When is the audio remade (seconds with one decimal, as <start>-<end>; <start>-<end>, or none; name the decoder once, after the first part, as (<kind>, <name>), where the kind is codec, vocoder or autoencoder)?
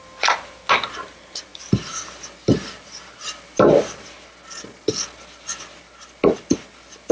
none